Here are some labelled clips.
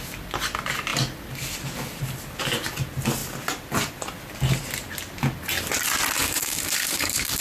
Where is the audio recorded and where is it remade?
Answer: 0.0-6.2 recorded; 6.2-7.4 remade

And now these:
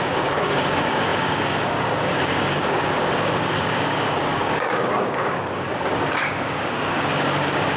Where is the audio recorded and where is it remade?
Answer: 0.0-7.8 remade

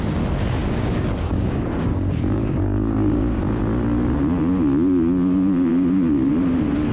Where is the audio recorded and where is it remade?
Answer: 0.0-0.6 recorded; 0.6-3.6 remade; 3.6-6.9 recorded

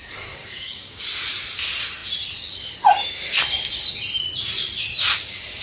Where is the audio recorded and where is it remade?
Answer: 0.0-0.4 recorded; 0.4-1.0 remade; 1.0-5.6 recorded

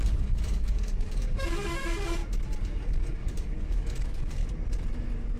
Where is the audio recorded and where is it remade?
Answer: 0.0-2.2 remade; 2.2-2.8 recorded; 2.8-4.4 remade; 4.4-5.4 recorded

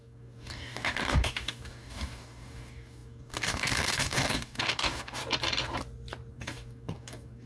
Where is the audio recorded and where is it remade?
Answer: 0.0-5.2 remade; 5.2-6.3 recorded; 6.3-7.5 remade